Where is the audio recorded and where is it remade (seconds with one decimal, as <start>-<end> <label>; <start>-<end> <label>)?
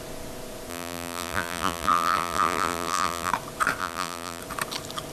0.0-0.7 recorded; 0.7-3.3 remade; 3.3-3.8 recorded; 3.8-4.4 remade; 4.4-5.1 recorded